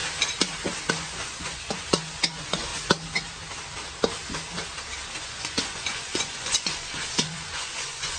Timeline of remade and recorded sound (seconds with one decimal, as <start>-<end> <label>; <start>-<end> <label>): 0.0-0.9 recorded; 0.9-2.7 remade; 2.7-5.2 recorded; 5.2-8.2 remade